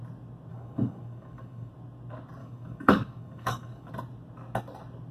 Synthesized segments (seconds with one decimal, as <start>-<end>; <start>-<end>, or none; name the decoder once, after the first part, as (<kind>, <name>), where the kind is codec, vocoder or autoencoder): 0.5-1.7 (codec, DAC); 2.4-3.9